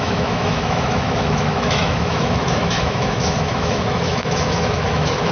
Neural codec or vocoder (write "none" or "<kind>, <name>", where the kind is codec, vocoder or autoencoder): autoencoder, DAC-VAE